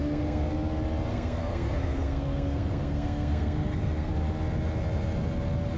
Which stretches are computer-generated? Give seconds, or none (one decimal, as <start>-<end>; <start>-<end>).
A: 0.0-0.5; 1.1-4.1